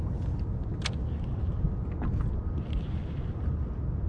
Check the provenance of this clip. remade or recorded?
recorded